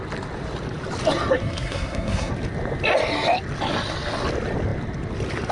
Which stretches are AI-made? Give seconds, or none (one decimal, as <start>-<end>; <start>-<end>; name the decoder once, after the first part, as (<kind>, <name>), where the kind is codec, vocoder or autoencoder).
1.4-2.3 (codec, SNAC)